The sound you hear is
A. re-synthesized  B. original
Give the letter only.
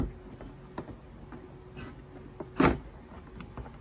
B